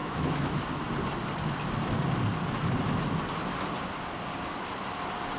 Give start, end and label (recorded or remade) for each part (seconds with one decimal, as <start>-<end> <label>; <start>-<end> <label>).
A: 0.0-0.5 remade; 0.5-5.4 recorded